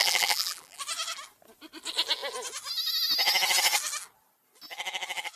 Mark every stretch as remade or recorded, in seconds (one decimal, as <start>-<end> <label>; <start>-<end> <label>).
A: 0.0-0.8 remade; 0.8-5.4 recorded